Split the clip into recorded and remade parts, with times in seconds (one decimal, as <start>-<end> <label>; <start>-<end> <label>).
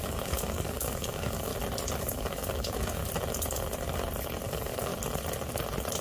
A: 0.0-1.5 remade; 1.5-2.0 recorded; 2.0-3.0 remade; 3.0-4.5 recorded; 4.5-4.9 remade; 4.9-6.0 recorded